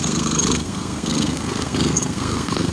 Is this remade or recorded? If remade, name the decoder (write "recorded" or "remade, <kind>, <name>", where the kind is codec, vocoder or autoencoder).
remade, codec, SNAC